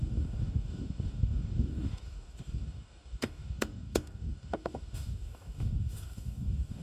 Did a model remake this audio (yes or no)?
yes